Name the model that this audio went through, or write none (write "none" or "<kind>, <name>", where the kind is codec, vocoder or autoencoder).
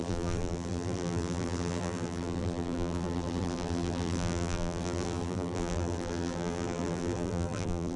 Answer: vocoder, BigVGAN v2